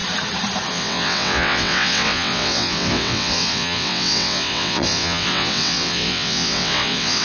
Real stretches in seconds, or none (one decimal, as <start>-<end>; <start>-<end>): 0.0-0.7